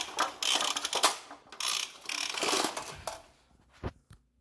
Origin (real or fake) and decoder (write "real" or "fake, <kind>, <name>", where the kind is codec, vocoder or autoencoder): real